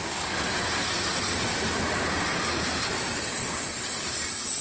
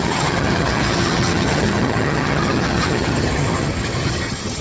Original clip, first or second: first